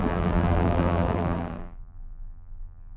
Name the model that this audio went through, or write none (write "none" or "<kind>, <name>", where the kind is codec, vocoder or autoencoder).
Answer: vocoder, BigVGAN v2